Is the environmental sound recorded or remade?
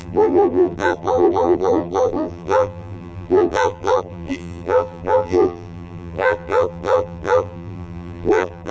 remade